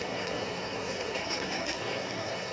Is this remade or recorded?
remade